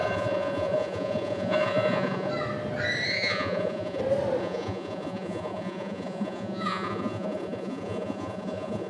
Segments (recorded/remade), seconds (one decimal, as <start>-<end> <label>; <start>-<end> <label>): 0.0-2.3 remade; 2.3-3.1 recorded; 3.1-4.0 remade; 4.0-4.4 recorded; 4.4-8.9 remade